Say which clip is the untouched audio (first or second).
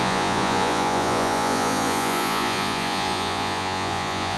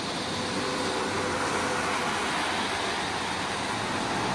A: second